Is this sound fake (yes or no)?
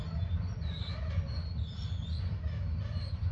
no